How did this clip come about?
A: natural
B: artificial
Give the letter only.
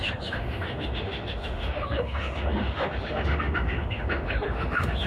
B